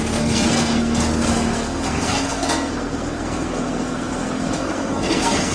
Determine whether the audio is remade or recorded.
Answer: remade